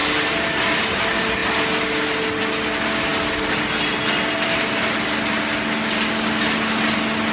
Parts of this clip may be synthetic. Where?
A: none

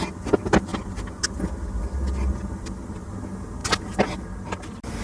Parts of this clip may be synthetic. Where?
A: none

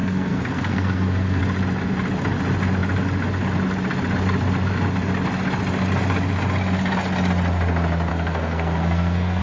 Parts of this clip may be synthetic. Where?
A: 0.0-1.4 (codec, SNAC); 8.1-9.4